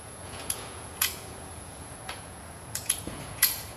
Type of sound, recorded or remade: remade